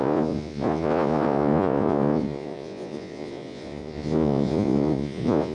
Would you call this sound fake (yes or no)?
yes